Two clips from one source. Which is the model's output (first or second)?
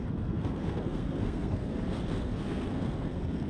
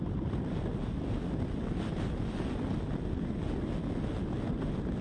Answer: first